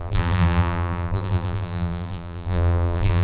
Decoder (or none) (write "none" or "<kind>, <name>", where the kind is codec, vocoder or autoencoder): vocoder, BigVGAN v2